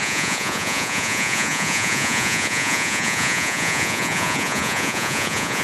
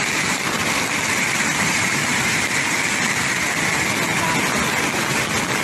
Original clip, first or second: second